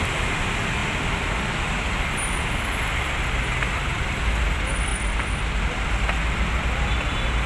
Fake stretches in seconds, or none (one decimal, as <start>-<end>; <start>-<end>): none